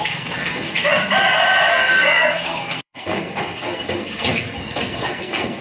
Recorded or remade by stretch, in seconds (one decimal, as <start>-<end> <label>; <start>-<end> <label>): 0.0-1.0 remade; 1.0-1.7 recorded; 1.7-5.6 remade